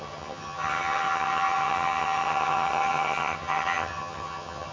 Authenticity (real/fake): fake